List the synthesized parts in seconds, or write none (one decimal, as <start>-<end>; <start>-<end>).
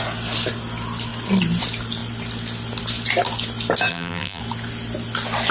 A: 3.9-4.4